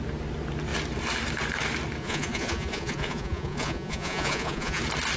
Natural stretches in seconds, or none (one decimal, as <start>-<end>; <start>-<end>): 0.0-2.0; 4.8-5.2